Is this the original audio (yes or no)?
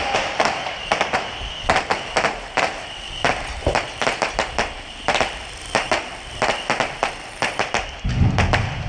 no